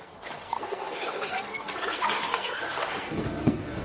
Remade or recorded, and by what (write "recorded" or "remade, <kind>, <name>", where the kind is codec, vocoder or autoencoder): remade, codec, SNAC